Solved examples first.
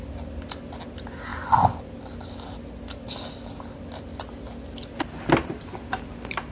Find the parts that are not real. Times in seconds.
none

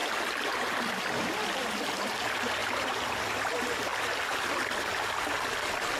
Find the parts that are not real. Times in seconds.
2.6-3.2 (vocoder, BigVGAN v2)

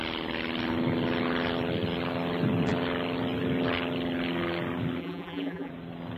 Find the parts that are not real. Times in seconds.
5.0-5.7 (vocoder, BigVGAN v2)